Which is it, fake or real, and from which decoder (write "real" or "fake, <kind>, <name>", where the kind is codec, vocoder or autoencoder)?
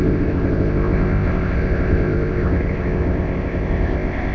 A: fake, codec, ZipCodec